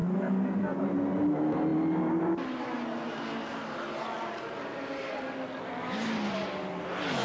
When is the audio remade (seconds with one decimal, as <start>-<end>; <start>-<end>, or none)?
0.0-0.8